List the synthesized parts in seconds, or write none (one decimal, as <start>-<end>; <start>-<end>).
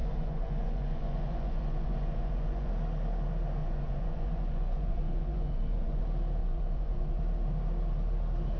0.0-2.7; 3.6-6.0; 6.4-7.2